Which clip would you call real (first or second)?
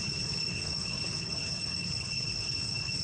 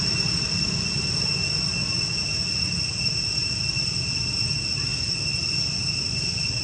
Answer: second